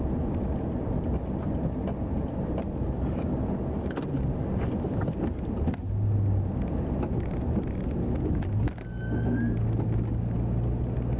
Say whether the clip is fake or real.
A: real